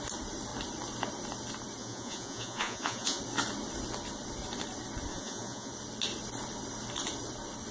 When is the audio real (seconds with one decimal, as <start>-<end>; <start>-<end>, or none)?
0.0-1.8; 3.2-5.1; 5.7-7.7